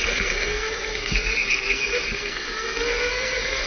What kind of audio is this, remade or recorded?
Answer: remade